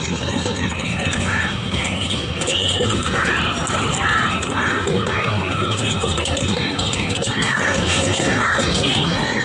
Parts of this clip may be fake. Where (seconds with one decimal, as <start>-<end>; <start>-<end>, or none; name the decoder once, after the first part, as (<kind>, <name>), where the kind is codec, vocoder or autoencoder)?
0.0-3.3 (codec, SNAC); 4.3-9.4

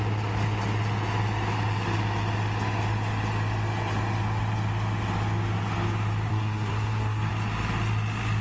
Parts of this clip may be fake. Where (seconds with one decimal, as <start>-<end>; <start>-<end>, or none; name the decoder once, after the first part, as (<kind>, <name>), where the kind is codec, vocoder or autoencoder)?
6.3-7.3 (codec, SNAC)

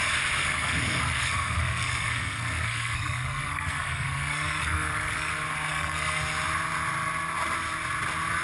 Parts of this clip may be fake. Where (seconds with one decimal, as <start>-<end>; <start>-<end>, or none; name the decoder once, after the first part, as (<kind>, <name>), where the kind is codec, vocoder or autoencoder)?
0.4-5.3 (codec, SNAC); 5.7-6.2

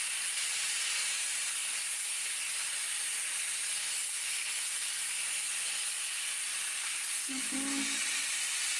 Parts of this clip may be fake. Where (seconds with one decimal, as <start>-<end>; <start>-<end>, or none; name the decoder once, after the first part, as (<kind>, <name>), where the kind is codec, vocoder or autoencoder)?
6.8-7.4 (codec, SNAC)

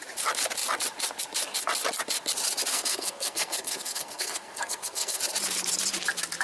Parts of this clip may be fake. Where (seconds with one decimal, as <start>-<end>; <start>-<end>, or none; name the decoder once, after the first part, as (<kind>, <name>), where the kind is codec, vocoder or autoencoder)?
2.7-5.2 (codec, SNAC)

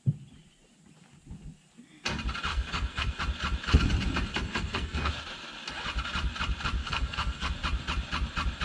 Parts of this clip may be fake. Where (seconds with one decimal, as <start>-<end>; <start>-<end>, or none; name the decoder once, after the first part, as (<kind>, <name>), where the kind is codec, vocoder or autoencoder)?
2.5-3.2 (codec, SNAC); 4.3-5.1; 6.8-7.5

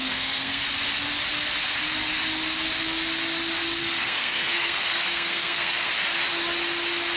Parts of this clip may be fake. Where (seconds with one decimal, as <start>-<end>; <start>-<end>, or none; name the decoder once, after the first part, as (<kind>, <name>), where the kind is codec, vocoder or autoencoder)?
0.0-0.6 (codec, SNAC); 3.8-5.9

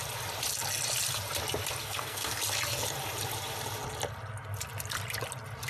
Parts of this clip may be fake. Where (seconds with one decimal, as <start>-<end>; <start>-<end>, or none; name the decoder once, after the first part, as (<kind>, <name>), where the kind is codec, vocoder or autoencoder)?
1.8-2.4 (codec, SNAC)